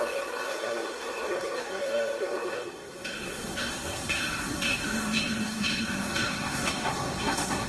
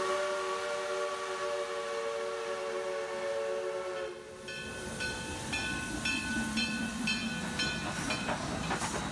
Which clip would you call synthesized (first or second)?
first